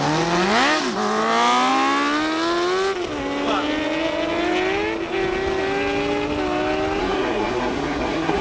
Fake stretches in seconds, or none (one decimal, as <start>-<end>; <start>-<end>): 7.0-8.4